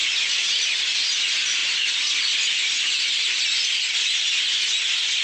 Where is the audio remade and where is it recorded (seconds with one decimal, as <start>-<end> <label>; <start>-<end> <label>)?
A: 0.0-0.8 remade; 0.8-5.2 recorded